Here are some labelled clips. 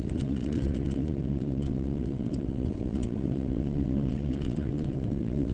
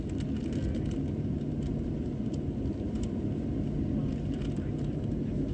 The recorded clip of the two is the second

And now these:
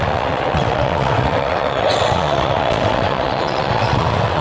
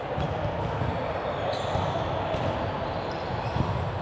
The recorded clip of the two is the second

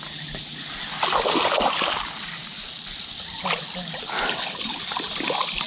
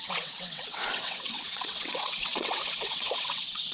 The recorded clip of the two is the first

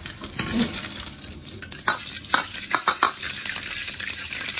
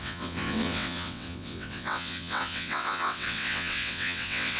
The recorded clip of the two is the first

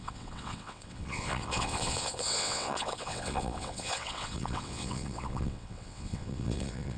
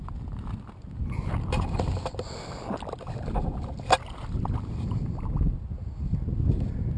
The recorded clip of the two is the second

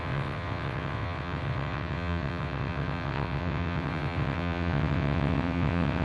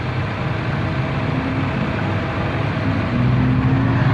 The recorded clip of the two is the second